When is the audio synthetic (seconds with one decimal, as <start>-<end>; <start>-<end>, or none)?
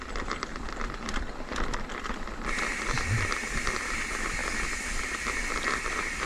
0.0-0.5; 2.8-4.4; 5.0-6.3